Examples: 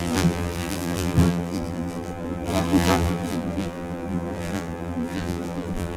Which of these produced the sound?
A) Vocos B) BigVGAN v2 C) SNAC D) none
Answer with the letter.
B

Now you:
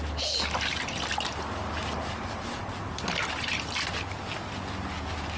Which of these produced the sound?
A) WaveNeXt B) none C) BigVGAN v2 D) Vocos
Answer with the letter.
B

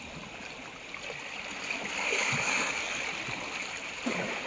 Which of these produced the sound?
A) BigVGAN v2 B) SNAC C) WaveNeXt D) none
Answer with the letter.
D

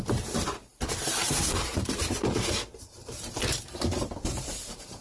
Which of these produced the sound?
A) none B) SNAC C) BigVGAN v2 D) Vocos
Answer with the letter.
C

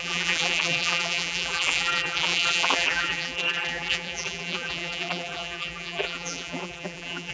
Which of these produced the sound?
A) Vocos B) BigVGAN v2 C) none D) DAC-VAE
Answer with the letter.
B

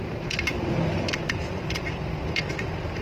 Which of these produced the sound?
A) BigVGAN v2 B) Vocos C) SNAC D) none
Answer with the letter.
A